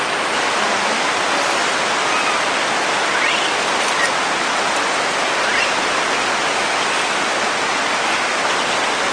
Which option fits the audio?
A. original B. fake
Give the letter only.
A